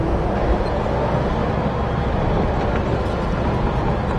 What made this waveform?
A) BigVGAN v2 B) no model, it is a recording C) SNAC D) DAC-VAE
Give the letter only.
B